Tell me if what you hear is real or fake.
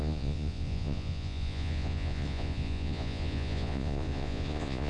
fake